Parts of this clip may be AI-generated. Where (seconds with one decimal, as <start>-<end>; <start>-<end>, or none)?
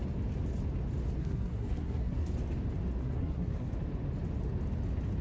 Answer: 1.2-2.3; 3.0-3.7